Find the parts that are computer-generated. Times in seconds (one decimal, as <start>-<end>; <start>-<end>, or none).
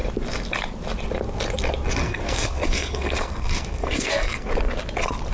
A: 2.0-4.5